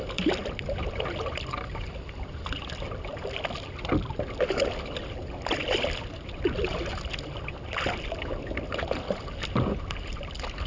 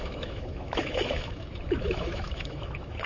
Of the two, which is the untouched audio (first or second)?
first